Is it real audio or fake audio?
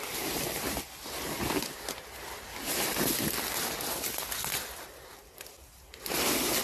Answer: real